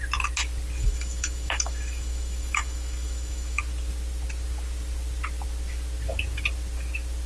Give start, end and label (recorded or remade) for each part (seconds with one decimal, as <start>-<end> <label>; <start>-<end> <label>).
0.0-0.8 recorded; 0.8-3.6 remade; 3.6-7.3 recorded